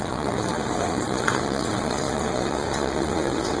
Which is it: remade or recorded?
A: remade